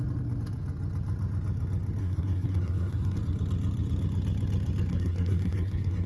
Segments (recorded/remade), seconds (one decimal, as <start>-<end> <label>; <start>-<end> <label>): 0.0-2.0 recorded; 2.0-3.2 remade; 3.2-4.9 recorded; 4.9-6.1 remade